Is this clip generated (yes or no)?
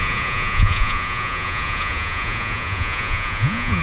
yes